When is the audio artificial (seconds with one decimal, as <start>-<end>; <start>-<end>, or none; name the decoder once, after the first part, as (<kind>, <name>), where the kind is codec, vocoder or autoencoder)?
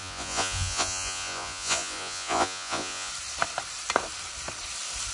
0.0-3.1 (vocoder, Vocos)